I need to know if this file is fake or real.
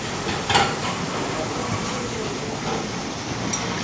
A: real